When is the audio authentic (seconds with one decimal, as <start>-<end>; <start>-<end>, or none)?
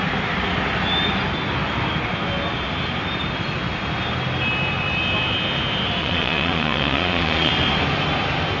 0.0-6.0; 7.5-8.6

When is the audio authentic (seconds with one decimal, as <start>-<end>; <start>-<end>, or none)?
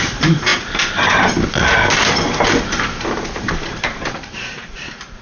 0.5-3.3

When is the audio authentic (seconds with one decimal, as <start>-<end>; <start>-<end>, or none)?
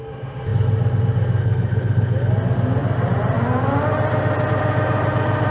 0.0-1.4; 2.3-5.5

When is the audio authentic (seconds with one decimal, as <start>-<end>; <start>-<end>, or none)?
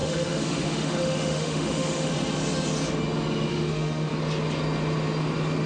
2.1-3.5; 4.1-5.7